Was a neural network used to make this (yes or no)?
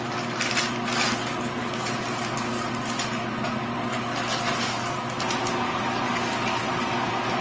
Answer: no